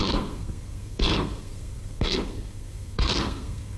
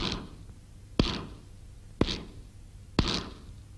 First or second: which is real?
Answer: second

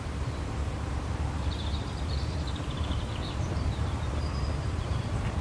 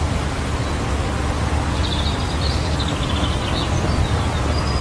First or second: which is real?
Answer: second